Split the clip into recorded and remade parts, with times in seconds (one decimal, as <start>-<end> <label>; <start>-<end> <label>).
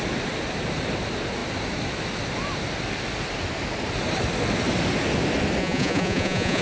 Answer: 0.0-5.6 recorded; 5.6-6.6 remade